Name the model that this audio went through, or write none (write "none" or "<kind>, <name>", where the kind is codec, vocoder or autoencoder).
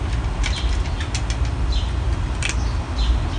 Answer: none